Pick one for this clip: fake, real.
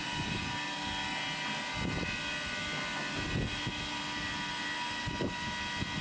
real